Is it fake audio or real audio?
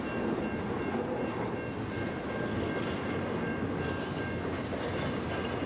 real